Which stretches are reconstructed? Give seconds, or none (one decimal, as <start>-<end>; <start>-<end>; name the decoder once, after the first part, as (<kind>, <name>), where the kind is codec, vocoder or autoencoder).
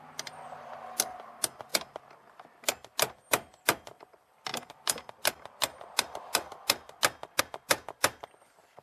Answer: 0.0-1.7 (vocoder, BigVGAN v2); 3.1-4.5; 7.4-8.8